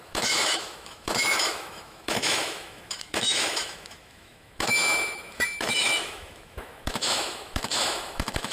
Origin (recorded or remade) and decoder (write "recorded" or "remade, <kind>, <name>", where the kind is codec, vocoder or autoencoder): remade, autoencoder, DAC-VAE